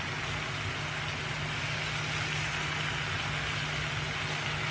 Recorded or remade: recorded